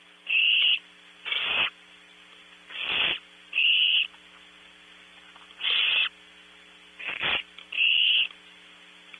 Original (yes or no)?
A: yes